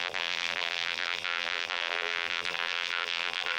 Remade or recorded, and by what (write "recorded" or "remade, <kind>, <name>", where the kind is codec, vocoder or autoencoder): remade, vocoder, BigVGAN v2